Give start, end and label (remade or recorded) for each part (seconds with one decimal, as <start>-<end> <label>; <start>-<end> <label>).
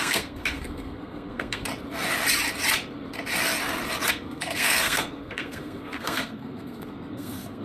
0.0-1.7 remade; 1.7-4.1 recorded; 4.1-7.6 remade